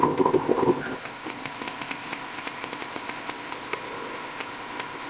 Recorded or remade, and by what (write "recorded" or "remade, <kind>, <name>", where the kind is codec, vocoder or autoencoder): remade, codec, ZipCodec